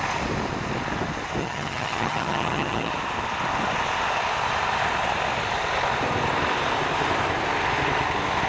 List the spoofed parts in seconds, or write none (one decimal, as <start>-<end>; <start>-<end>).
1.4-2.9